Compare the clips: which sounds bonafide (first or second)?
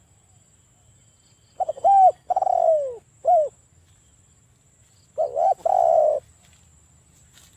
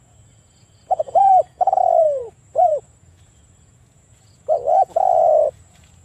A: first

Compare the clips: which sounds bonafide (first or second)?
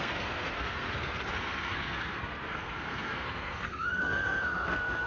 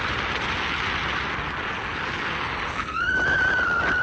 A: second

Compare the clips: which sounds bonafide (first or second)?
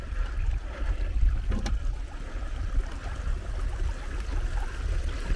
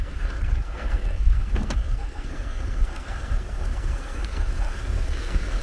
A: first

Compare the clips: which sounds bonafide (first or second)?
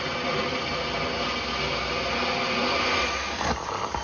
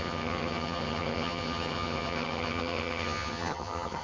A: first